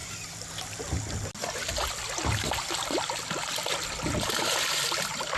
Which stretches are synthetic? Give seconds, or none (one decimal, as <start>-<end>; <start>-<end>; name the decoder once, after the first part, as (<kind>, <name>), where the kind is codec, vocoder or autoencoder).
none